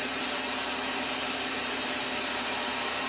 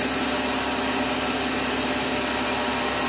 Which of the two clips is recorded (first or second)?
second